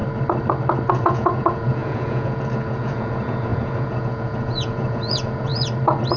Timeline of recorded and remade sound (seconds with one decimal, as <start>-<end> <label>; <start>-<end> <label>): 0.0-0.9 recorded; 0.9-5.5 remade; 5.5-6.2 recorded

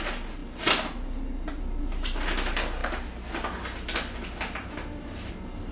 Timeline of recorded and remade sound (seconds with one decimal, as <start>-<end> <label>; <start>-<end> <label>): 0.0-5.7 recorded

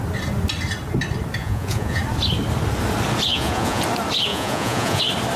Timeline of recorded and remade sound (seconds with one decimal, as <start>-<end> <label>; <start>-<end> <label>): 0.0-1.4 recorded; 1.4-2.0 remade; 2.0-3.3 recorded; 3.3-3.8 remade; 3.8-4.3 recorded; 4.3-5.0 remade; 5.0-5.4 recorded

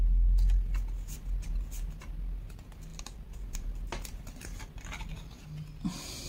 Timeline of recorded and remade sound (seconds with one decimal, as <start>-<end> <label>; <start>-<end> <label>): 0.0-2.9 recorded; 2.9-4.6 remade; 4.6-6.3 recorded

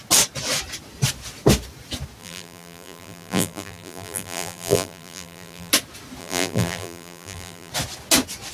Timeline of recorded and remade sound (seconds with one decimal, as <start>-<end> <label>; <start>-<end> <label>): 0.0-2.2 recorded; 2.2-5.7 remade; 5.7-6.2 recorded; 6.2-7.7 remade; 7.7-8.5 recorded

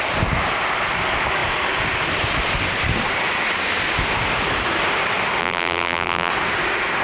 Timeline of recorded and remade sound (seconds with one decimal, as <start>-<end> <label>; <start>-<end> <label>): 0.0-5.4 recorded; 5.4-6.3 remade; 6.3-7.0 recorded